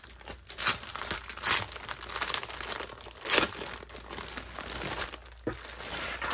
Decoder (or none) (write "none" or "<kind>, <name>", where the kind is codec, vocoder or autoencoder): none